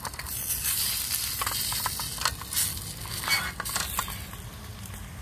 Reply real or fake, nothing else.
real